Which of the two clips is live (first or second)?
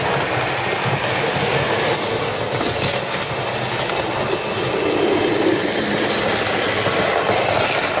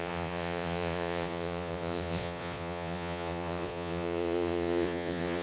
first